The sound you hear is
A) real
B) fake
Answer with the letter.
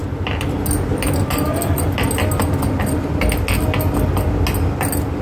A